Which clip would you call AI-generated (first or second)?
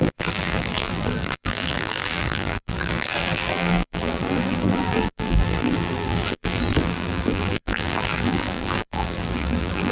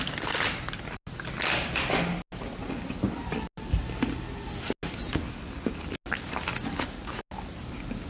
first